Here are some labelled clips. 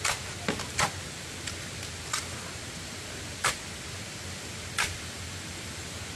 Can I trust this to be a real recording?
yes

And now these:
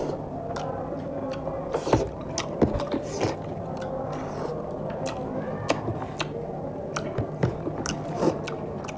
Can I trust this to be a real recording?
yes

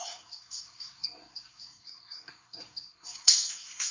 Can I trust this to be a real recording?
no